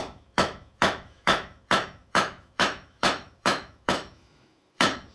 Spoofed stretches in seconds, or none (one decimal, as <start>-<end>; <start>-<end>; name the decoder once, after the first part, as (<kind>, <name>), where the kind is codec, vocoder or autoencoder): 0.0-5.1 (autoencoder, DAC-VAE)